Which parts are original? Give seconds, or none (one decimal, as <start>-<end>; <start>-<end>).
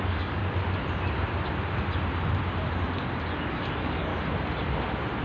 0.4-3.5; 4.1-5.2